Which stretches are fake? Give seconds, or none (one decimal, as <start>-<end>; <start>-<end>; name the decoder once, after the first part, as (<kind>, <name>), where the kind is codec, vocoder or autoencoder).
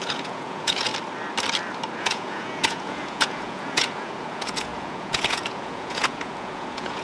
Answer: 0.0-0.9 (vocoder, Vocos); 2.0-7.0